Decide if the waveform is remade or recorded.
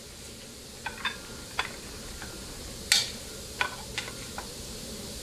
recorded